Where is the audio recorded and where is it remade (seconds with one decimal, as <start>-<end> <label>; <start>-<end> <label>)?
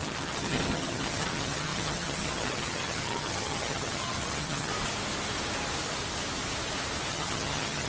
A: 0.0-4.7 remade; 4.7-7.1 recorded; 7.1-7.9 remade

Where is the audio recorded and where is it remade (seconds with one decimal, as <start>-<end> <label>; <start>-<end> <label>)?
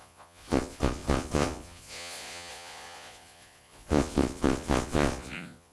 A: 0.0-5.7 remade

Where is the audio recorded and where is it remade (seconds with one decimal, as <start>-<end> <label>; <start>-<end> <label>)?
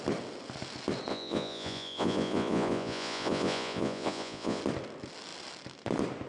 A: 0.0-1.1 recorded; 1.1-4.6 remade; 4.6-6.3 recorded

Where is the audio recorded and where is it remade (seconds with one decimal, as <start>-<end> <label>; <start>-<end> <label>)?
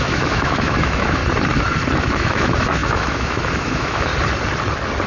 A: 0.0-1.2 remade; 1.2-2.0 recorded; 2.0-4.1 remade; 4.1-5.1 recorded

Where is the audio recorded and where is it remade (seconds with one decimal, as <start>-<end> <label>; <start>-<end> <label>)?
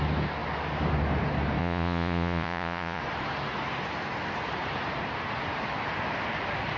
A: 0.0-1.6 recorded; 1.6-3.0 remade; 3.0-6.8 recorded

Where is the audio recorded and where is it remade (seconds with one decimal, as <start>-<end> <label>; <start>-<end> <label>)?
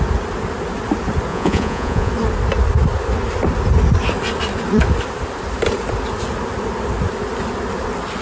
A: 0.0-1.3 recorded; 1.3-2.1 remade; 2.1-8.2 recorded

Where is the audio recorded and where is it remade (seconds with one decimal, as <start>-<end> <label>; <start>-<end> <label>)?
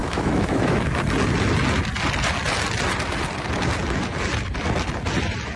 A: 0.0-1.0 remade; 1.0-5.6 recorded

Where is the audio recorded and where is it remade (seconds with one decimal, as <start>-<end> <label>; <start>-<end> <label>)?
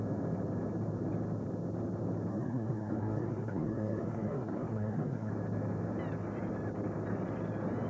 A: 0.0-2.3 recorded; 2.3-5.3 remade; 5.3-7.9 recorded